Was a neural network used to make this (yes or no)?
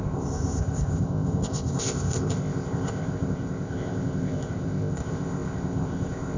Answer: yes